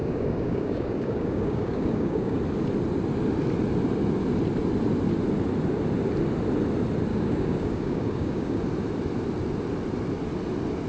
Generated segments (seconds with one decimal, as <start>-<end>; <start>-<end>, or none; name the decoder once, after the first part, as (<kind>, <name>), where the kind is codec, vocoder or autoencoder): 0.0-2.4 (codec, DAC); 7.1-8.6